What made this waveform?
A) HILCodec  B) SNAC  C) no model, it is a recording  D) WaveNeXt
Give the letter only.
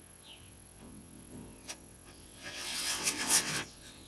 D